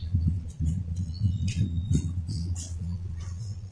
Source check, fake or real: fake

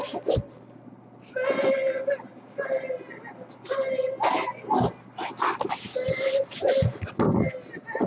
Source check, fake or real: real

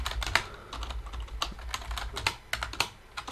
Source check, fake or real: real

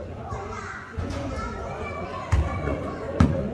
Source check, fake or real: fake